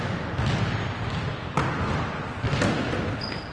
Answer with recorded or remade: recorded